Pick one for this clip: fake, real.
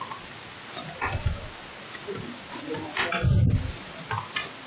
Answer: real